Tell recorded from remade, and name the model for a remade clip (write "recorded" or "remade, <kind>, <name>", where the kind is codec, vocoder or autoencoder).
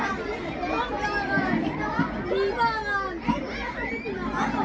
recorded